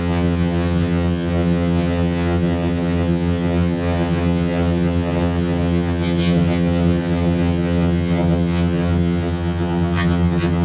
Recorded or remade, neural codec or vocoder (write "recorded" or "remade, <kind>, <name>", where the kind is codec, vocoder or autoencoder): remade, vocoder, HiFi-GAN